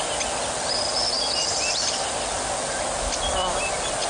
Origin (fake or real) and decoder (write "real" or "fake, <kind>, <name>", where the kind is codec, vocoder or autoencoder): real